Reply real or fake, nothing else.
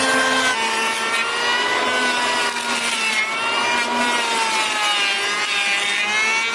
real